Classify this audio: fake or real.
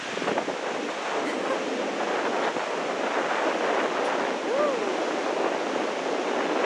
real